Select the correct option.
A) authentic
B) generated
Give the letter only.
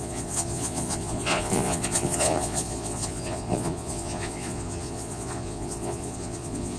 B